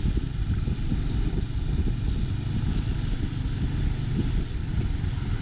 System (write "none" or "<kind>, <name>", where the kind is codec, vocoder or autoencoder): none